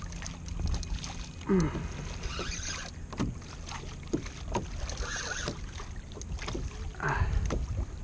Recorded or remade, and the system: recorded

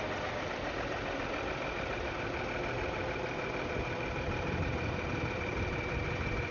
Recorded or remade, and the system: recorded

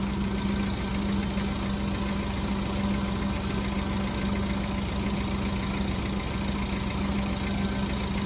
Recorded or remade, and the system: recorded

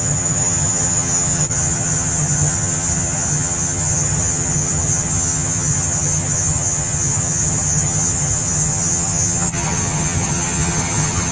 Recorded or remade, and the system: remade, vocoder, HiFi-GAN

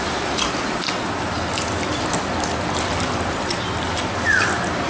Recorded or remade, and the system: recorded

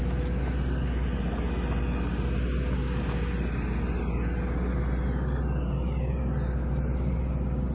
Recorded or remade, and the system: recorded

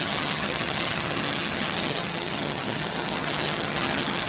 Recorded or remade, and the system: remade, vocoder, HiFi-GAN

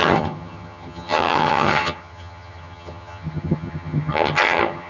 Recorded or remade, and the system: remade, vocoder, HiFi-GAN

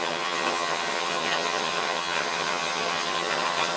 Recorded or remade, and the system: remade, vocoder, HiFi-GAN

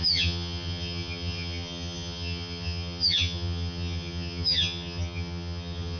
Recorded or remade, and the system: remade, vocoder, HiFi-GAN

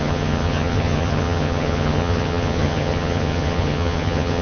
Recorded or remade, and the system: remade, vocoder, HiFi-GAN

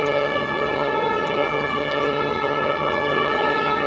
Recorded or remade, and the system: remade, vocoder, HiFi-GAN